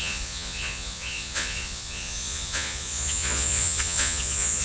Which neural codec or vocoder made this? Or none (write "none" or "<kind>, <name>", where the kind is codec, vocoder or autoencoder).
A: vocoder, Vocos